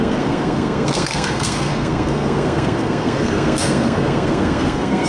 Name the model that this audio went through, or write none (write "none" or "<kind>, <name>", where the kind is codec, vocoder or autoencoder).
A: codec, SNAC